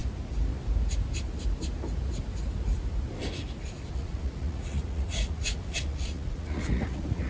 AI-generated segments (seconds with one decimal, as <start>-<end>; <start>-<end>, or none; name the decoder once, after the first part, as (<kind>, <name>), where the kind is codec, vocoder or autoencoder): 3.9-7.3 (vocoder, Vocos)